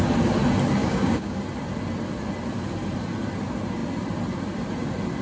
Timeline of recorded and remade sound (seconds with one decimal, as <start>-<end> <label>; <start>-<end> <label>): 0.0-0.8 recorded; 0.8-1.4 remade; 1.4-5.2 recorded